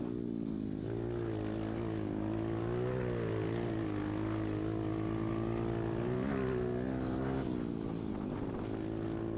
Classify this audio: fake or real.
real